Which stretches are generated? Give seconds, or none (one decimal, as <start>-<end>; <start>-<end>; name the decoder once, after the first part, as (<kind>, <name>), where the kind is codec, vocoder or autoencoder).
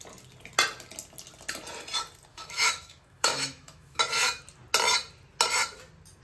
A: 2.3-4.0 (autoencoder, DAC-VAE)